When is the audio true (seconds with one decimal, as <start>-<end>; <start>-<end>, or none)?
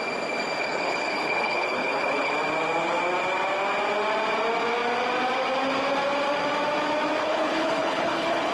0.0-0.6; 2.3-7.2